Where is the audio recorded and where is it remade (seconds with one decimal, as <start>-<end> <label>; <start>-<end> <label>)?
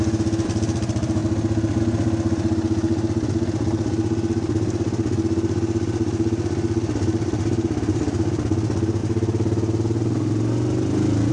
0.0-11.3 recorded